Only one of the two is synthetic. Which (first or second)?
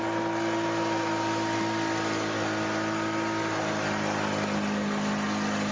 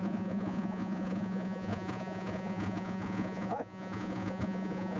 second